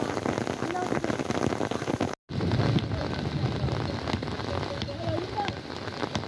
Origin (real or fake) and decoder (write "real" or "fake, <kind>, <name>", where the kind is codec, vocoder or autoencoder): real